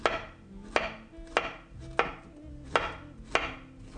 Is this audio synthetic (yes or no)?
no